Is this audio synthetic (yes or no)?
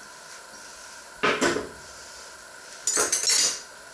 no